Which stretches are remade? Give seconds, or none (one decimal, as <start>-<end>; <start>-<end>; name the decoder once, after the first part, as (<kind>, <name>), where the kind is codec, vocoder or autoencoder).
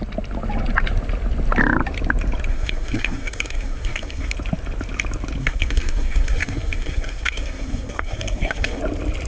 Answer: 2.5-4.3 (codec, SNAC); 5.4-8.8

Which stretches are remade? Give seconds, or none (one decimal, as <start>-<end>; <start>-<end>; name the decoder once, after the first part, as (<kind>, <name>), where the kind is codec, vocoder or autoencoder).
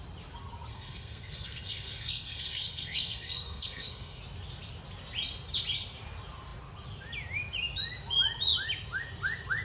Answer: 0.7-4.2 (codec, SNAC)